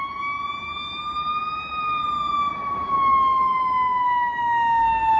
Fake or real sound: real